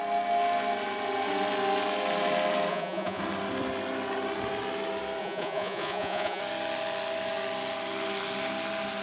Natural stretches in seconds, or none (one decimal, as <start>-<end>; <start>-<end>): 0.0-2.7; 3.2-5.2; 6.4-9.0